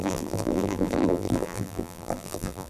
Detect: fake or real fake